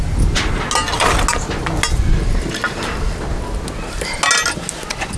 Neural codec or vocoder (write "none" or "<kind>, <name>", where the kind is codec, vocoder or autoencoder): none